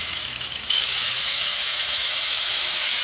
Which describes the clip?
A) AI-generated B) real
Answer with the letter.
A